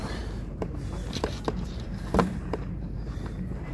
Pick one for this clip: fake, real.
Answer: fake